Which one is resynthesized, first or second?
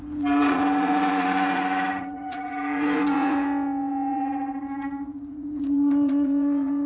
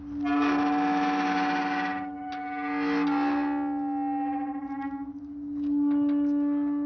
first